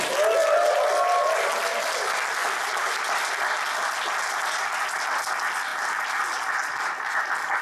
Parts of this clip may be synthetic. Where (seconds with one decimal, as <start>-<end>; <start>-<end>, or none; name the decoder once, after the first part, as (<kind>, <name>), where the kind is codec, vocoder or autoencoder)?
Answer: none